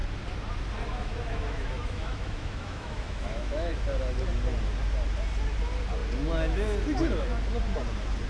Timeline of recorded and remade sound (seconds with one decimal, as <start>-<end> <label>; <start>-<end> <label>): 0.0-1.0 recorded; 1.0-3.7 remade; 3.7-8.3 recorded